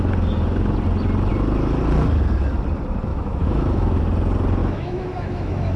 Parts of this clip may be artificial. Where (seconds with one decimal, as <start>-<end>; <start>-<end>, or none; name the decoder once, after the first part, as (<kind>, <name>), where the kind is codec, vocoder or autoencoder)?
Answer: 3.1-4.0 (autoencoder, DAC-VAE); 4.6-5.8